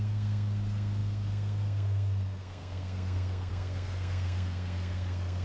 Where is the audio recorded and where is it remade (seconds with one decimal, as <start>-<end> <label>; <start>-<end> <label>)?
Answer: 0.0-5.4 remade